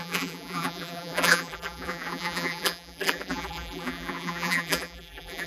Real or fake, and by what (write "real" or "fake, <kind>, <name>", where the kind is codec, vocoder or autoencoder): fake, vocoder, BigVGAN v2